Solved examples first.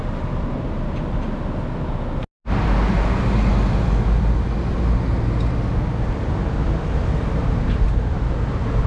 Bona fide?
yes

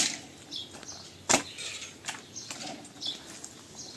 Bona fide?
yes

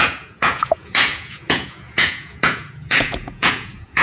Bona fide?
no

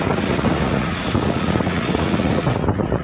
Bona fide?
no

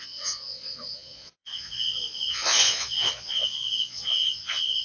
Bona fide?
no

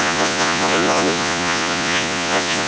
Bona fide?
no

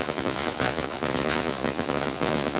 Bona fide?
no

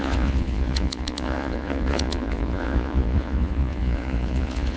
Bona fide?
no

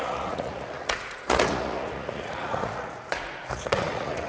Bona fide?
no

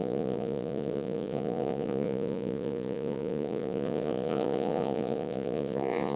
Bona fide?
no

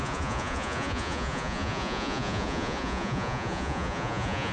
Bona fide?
no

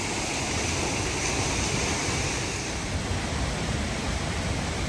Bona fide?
yes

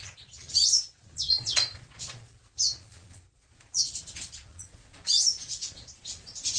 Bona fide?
no